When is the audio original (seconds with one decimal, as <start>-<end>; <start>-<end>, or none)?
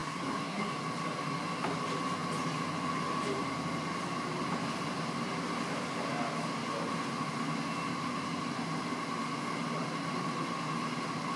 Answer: 0.7-11.4